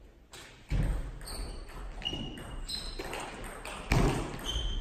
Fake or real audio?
real